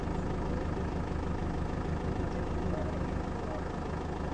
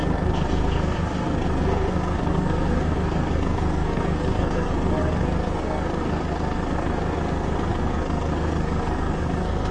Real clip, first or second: first